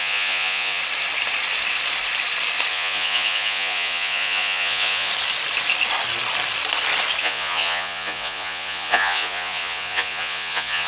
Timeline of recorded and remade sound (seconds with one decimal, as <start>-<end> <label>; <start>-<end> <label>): 0.0-0.8 remade; 0.8-2.7 recorded; 2.7-5.1 remade; 5.1-7.2 recorded; 7.2-10.9 remade